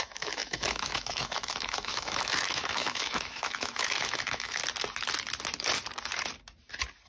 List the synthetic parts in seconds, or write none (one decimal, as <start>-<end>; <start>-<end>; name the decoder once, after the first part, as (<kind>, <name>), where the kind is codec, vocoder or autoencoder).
0.0-4.6 (autoencoder, DAC-VAE)